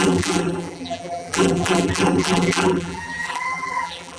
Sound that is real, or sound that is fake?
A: fake